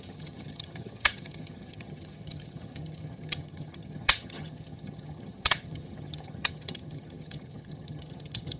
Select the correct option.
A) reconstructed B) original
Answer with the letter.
A